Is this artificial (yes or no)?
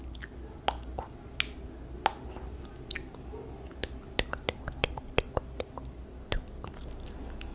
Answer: no